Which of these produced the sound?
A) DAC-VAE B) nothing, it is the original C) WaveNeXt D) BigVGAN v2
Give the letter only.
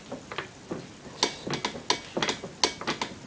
B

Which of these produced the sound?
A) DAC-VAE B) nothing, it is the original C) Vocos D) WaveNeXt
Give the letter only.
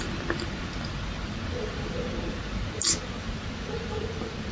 B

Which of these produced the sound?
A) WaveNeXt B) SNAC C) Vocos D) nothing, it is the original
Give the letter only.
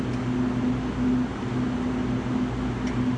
D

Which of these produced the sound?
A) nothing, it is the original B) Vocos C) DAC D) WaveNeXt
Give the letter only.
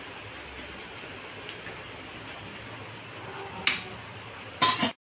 A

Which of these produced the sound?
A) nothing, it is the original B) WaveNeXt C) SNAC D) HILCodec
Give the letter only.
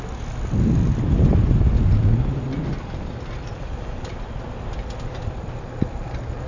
A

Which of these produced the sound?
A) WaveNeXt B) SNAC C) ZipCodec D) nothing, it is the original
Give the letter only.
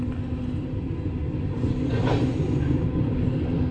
D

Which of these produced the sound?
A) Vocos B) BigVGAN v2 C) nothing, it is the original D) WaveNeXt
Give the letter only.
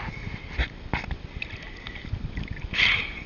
C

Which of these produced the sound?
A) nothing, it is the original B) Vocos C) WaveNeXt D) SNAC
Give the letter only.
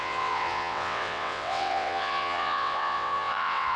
C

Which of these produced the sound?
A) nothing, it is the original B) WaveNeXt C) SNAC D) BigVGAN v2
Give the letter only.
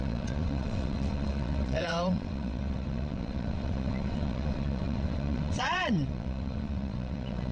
B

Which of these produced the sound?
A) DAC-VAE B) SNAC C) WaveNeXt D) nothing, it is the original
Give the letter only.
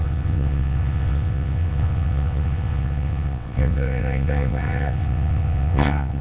C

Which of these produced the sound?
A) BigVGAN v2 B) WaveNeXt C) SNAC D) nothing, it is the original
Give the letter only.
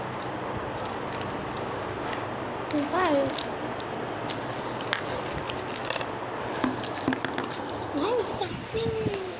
D